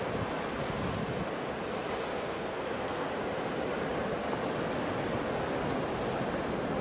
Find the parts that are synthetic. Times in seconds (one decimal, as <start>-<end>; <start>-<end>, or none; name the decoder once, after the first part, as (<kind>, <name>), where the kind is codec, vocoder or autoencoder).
2.1-3.1 (codec, SNAC)